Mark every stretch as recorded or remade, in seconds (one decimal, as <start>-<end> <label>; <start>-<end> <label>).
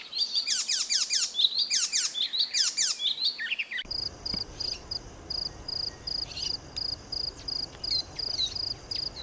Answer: 0.0-9.2 recorded